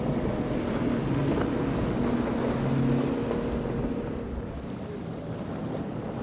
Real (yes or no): yes